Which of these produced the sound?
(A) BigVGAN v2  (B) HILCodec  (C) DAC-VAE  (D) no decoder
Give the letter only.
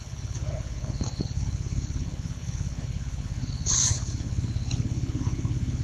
B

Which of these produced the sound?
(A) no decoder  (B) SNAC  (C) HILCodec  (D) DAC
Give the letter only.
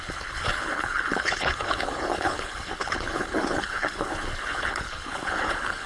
C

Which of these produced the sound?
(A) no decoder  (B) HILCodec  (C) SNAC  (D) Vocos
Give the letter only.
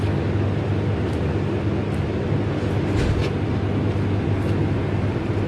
A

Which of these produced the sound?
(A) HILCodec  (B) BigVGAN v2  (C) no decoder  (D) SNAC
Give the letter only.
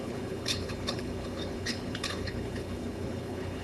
A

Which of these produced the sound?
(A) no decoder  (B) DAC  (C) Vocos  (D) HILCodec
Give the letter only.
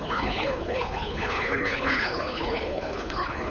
D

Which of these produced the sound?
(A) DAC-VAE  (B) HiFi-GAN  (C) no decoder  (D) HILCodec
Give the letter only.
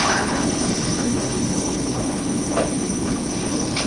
D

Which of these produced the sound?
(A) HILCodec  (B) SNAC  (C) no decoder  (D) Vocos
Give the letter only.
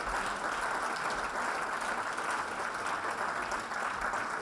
C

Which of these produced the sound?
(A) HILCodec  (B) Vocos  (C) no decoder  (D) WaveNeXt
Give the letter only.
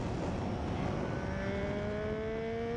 C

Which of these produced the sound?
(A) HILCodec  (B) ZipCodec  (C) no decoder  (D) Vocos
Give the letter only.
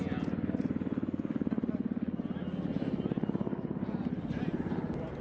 C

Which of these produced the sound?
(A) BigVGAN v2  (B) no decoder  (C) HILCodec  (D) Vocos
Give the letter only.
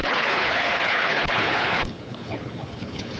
C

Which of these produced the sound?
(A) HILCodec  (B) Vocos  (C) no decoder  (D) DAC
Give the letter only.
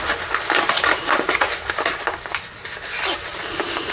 C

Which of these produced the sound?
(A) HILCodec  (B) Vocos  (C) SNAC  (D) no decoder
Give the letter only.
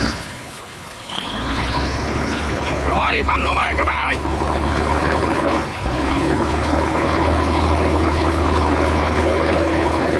A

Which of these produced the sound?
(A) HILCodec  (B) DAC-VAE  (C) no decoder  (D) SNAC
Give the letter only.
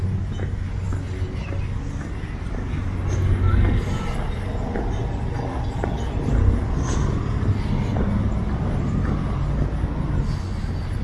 C